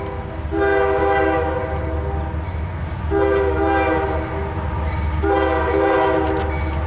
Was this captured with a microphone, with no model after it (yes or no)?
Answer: yes